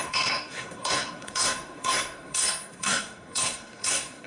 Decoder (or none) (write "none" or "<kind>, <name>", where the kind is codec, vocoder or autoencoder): codec, SNAC